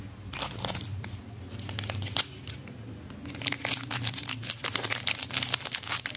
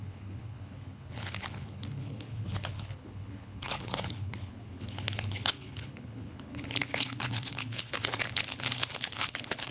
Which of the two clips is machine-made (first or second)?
second